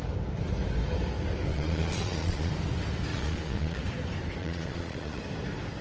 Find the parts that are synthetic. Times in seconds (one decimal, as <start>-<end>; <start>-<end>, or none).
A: 1.5-2.5; 3.1-3.8; 4.4-5.2